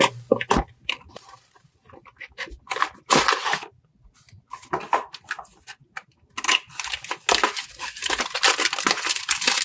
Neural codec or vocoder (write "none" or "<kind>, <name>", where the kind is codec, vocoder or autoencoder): none